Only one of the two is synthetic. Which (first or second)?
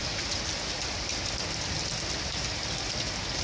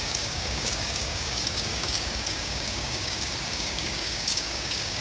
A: second